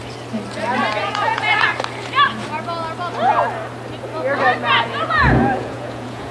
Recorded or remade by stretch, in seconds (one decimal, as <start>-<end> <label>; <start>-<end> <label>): 0.0-1.0 recorded; 1.0-1.7 remade; 1.7-4.7 recorded; 4.7-6.3 remade